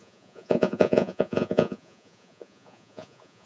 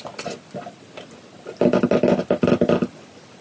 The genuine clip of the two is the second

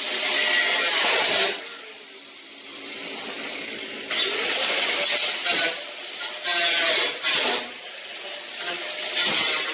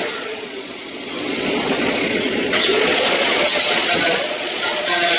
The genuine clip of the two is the first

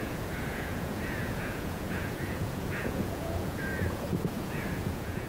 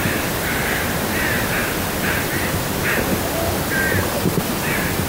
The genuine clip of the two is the second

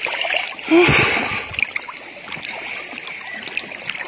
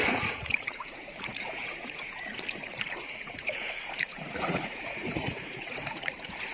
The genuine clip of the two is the first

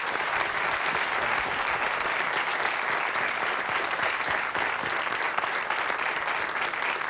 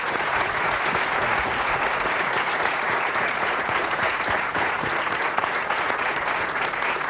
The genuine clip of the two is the first